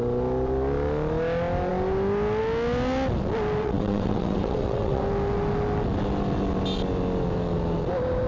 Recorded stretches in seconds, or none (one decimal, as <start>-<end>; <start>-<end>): 0.0-3.6; 5.0-8.3